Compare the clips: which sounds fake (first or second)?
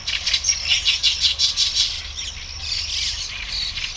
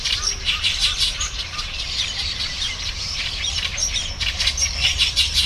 second